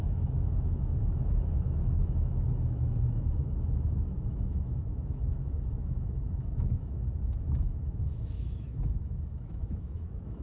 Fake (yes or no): yes